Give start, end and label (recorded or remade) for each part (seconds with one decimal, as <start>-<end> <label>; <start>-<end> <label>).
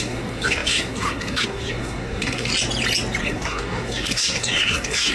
0.0-2.5 remade; 2.5-3.2 recorded; 3.2-5.1 remade